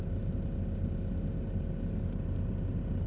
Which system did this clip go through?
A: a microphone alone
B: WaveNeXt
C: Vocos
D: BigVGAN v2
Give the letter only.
A